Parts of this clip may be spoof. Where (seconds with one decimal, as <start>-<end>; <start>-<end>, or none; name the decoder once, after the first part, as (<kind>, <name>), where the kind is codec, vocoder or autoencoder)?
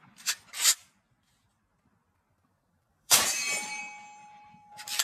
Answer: 0.8-3.8 (vocoder, BigVGAN v2); 4.2-5.0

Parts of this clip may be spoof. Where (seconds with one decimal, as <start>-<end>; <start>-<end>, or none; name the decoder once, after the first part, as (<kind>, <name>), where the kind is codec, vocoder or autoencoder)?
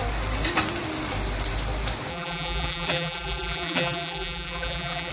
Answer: 2.1-5.1 (vocoder, BigVGAN v2)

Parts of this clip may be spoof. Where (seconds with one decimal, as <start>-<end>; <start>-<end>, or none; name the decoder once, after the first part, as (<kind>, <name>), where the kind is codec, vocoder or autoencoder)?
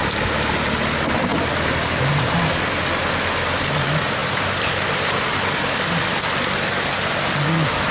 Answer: 1.3-2.8 (vocoder, BigVGAN v2)